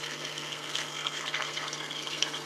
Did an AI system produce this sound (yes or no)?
yes